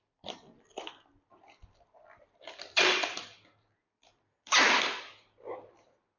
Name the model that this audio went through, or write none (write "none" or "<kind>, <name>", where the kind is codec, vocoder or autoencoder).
none